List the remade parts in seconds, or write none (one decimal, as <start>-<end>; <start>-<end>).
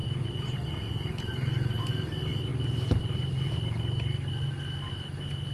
0.0-1.9; 2.5-3.5